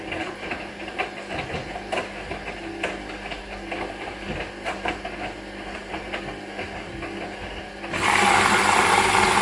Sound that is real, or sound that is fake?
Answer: real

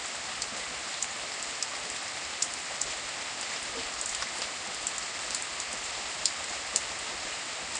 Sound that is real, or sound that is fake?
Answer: real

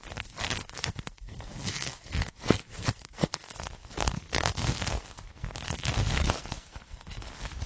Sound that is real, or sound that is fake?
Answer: fake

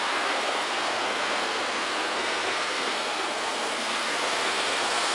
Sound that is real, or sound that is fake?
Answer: fake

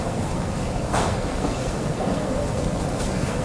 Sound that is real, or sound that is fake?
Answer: fake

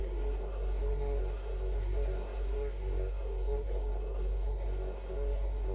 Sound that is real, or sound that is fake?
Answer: fake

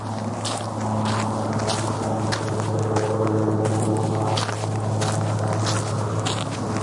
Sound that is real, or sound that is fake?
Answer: real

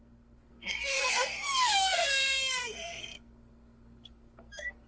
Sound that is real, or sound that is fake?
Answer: fake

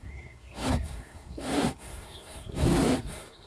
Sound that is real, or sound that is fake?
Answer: fake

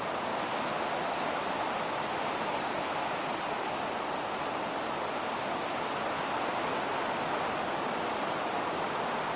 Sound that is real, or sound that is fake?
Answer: real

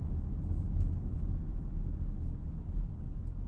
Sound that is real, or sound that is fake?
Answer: real